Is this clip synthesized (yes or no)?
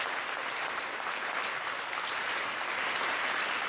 no